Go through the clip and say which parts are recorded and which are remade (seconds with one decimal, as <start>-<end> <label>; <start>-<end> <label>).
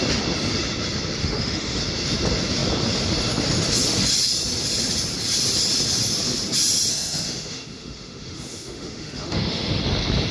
0.0-1.2 recorded; 1.2-1.8 remade; 1.8-6.9 recorded; 6.9-9.8 remade; 9.8-10.3 recorded